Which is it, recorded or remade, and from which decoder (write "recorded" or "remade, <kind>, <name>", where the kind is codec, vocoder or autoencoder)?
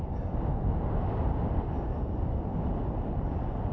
recorded